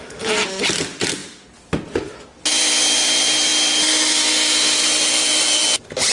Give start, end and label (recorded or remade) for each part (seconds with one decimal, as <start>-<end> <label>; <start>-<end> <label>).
0.0-6.1 recorded